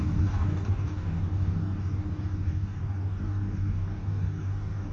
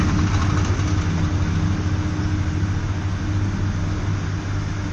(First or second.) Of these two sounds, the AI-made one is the first